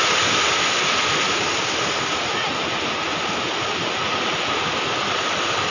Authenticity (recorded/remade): recorded